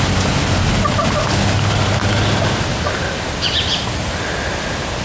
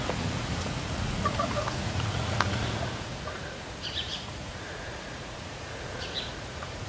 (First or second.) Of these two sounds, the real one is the first